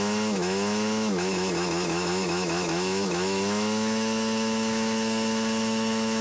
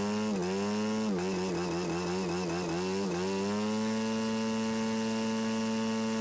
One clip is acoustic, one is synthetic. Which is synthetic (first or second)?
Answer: first